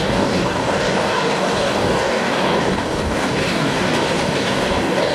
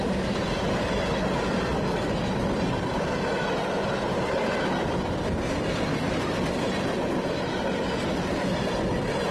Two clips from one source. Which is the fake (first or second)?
first